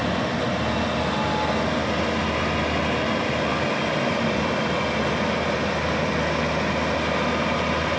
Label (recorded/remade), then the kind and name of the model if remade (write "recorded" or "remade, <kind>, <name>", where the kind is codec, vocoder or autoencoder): recorded